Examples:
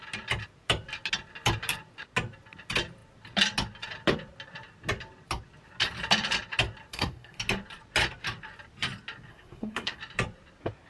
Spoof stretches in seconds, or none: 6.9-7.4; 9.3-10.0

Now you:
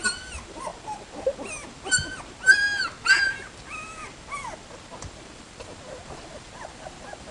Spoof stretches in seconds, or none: 0.0-0.7; 5.1-7.3

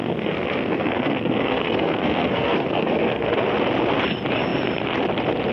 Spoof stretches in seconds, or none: 0.0-3.3

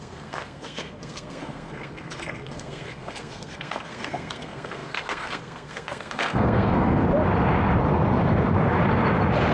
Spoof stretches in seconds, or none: 0.0-7.0

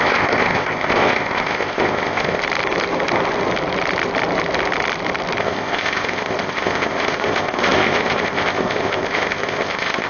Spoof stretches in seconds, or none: 0.0-2.4; 5.4-10.1

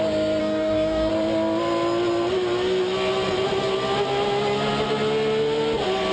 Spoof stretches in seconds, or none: 0.4-1.1

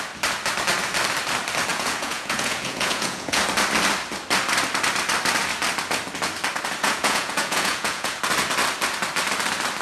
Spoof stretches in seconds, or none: 1.7-3.4; 6.8-8.2

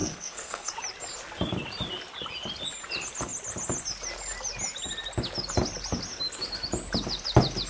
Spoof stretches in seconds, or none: 0.0-0.7